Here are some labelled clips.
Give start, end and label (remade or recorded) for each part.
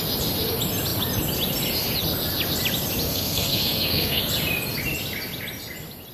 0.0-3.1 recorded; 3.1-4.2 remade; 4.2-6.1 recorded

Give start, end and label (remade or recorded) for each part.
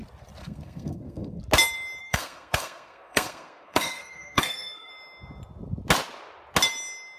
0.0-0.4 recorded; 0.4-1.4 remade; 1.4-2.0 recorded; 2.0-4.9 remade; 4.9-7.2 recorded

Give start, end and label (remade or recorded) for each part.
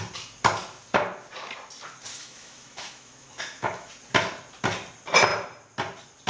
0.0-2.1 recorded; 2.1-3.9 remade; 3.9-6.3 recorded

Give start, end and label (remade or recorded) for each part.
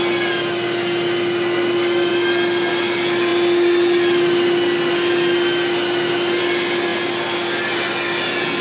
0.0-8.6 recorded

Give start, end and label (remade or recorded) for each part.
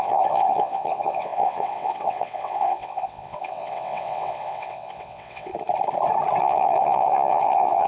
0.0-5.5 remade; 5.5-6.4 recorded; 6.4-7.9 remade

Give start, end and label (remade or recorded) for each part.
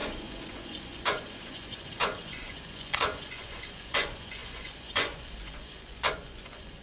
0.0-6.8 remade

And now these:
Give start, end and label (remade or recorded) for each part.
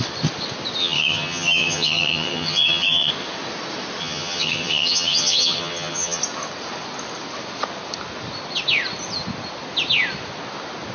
0.0-0.8 recorded; 0.8-3.1 remade; 3.1-4.0 recorded; 4.0-6.2 remade; 6.2-10.9 recorded